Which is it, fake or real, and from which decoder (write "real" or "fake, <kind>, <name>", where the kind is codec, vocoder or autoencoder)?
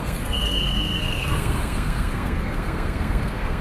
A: fake, codec, SNAC